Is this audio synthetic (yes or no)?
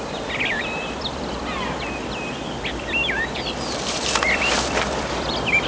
yes